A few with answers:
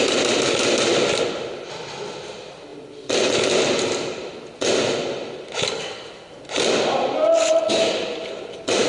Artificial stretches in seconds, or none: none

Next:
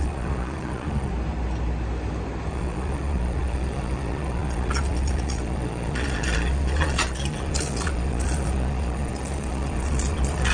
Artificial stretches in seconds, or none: 0.0-1.1; 2.5-10.5

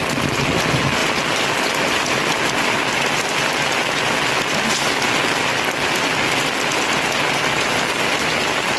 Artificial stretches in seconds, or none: none

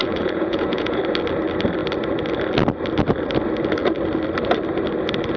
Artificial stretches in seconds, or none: 0.0-1.0

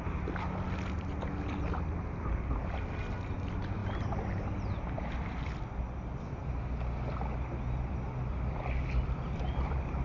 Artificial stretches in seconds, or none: none